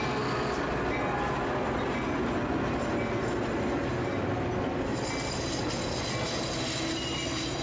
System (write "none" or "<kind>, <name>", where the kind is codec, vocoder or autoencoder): none